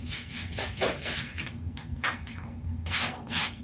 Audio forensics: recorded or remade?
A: remade